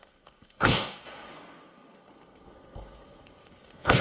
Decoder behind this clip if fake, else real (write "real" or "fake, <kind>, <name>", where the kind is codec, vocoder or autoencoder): fake, codec, SNAC